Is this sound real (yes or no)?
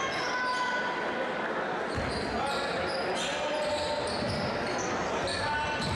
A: yes